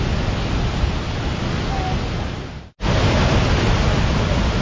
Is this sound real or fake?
real